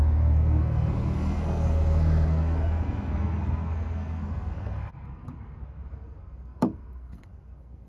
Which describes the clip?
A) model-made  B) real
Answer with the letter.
A